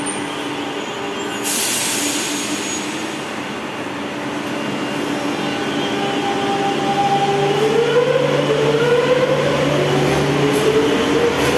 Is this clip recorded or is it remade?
recorded